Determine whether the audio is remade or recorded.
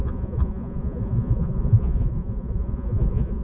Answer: remade